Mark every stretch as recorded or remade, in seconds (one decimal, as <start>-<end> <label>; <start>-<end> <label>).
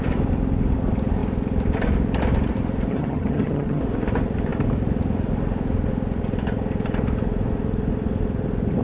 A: 0.0-2.9 recorded; 2.9-3.8 remade; 3.8-8.8 recorded